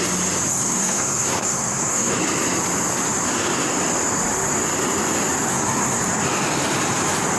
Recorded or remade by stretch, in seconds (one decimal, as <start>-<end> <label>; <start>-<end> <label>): 0.0-0.5 recorded; 0.5-2.2 remade; 2.2-5.5 recorded; 5.5-6.0 remade; 6.0-7.4 recorded